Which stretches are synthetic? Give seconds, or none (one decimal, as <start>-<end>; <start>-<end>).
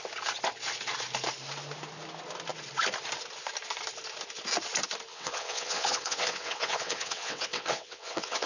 5.1-8.5